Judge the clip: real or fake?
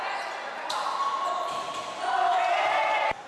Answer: fake